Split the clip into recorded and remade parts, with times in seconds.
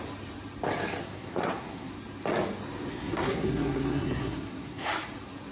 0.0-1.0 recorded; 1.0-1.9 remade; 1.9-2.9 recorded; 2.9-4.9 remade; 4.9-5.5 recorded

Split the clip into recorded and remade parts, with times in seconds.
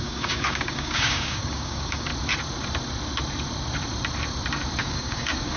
0.0-2.1 remade; 2.1-4.8 recorded; 4.8-5.6 remade